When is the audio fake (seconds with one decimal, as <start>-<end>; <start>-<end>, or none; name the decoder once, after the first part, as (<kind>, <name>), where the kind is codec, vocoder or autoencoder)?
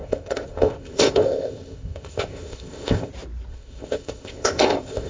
0.0-3.1 (codec, ZipCodec); 3.5-5.1